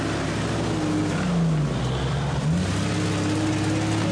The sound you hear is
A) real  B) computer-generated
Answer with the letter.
A